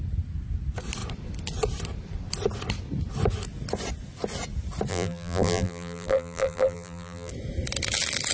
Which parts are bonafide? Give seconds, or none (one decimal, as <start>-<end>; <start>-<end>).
0.0-4.9; 7.3-8.3